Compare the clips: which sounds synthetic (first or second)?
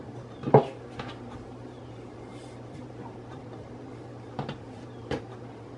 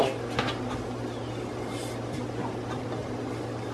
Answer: first